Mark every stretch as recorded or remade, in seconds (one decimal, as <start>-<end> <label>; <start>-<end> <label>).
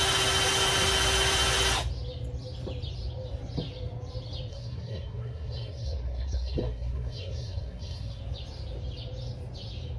0.0-4.5 recorded; 4.5-8.2 remade; 8.2-10.0 recorded